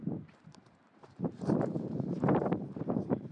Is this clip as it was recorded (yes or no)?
no